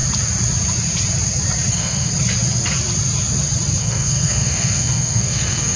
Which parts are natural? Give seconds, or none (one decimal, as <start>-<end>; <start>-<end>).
0.0-1.7; 2.1-3.8